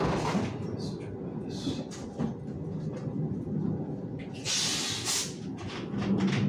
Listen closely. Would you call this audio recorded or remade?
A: recorded